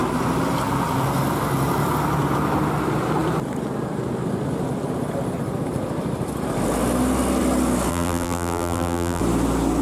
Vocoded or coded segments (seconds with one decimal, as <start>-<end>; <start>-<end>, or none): 7.9-9.2